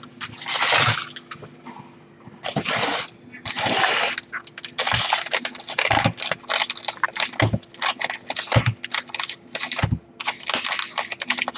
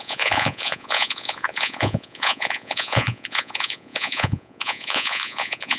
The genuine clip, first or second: first